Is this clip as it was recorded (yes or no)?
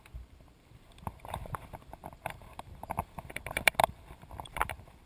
no